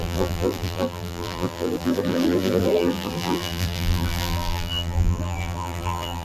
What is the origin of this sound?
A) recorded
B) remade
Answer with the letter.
B